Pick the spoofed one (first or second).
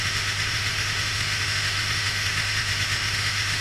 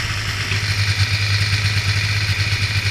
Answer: first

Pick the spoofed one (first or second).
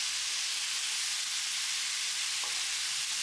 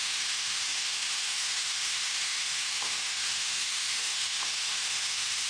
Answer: second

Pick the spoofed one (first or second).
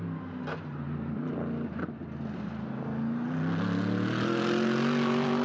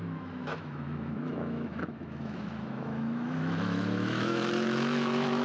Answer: second